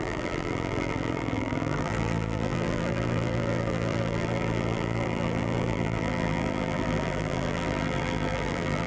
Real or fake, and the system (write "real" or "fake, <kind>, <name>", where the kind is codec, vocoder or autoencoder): fake, vocoder, BigVGAN v2